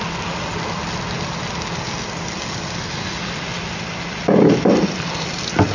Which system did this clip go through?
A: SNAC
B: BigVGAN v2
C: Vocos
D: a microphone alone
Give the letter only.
D